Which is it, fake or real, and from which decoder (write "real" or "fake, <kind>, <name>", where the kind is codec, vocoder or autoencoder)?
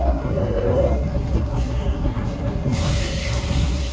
fake, codec, SNAC